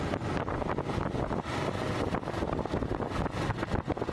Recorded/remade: recorded